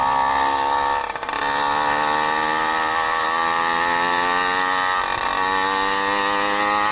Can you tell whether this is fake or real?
real